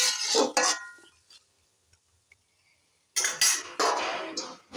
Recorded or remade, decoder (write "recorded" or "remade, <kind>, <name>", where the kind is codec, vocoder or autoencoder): recorded